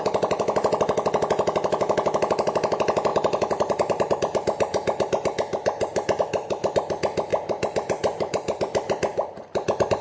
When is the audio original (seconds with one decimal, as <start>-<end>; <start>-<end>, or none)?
0.0-3.1; 6.2-7.3; 8.6-9.1

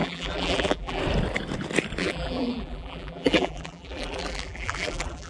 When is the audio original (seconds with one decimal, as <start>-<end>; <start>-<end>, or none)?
1.0-2.0